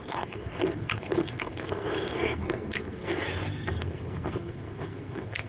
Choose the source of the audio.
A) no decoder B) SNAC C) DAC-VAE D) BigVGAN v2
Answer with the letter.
B